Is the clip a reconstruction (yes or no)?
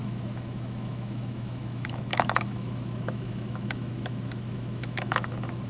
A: yes